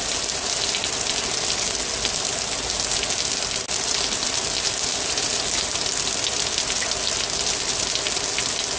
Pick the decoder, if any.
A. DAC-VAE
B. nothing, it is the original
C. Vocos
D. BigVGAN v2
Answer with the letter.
B